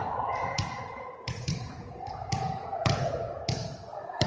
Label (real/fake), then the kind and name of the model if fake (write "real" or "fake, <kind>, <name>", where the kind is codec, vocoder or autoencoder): fake, vocoder, Vocos